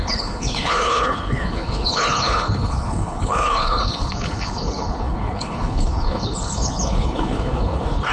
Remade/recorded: remade